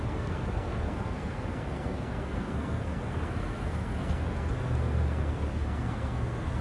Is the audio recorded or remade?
remade